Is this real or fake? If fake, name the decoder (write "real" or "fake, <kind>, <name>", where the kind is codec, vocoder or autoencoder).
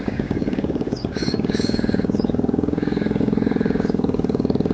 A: fake, codec, DAC